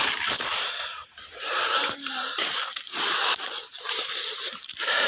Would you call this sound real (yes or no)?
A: no